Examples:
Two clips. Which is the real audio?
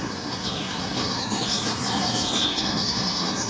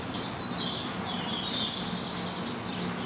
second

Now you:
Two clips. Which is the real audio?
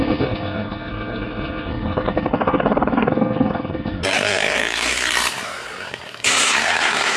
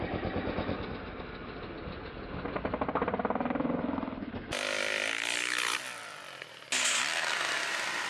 second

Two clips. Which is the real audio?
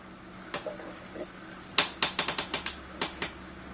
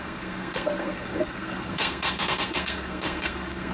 first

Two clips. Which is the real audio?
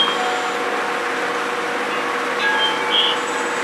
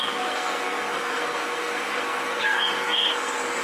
first